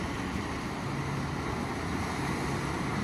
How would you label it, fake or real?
real